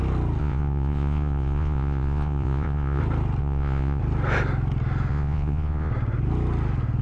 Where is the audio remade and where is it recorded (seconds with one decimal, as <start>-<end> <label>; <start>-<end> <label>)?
0.0-0.4 recorded; 0.4-3.0 remade; 3.0-3.4 recorded; 3.4-4.0 remade; 4.0-5.1 recorded; 5.1-5.9 remade; 5.9-7.0 recorded